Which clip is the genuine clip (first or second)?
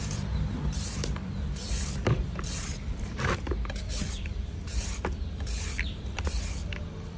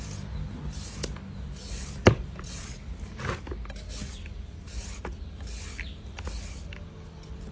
second